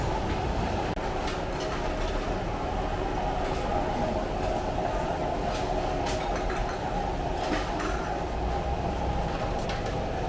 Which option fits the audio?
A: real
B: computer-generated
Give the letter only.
A